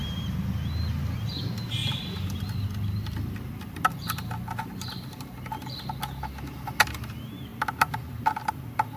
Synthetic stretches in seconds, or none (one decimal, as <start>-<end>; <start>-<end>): 1.8-6.0

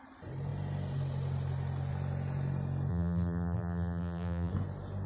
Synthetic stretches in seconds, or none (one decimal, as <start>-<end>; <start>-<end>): 2.9-4.5

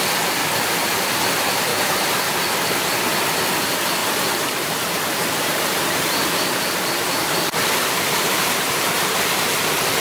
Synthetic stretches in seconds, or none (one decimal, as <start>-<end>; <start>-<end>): 0.4-1.2; 1.7-2.2; 4.0-9.2

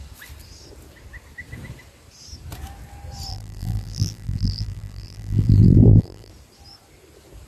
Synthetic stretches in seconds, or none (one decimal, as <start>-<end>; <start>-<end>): 3.3-6.3

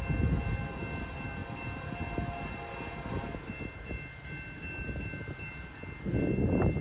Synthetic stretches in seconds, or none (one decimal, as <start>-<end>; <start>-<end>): none

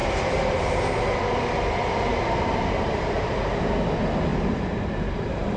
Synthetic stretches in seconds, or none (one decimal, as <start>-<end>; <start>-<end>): 0.0-0.8; 2.1-3.6; 4.3-5.6

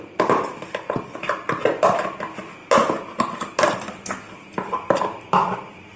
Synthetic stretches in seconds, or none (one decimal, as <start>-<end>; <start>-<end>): none

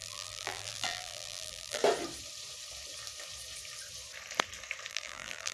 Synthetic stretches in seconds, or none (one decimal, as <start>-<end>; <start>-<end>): 0.0-1.8; 4.9-5.5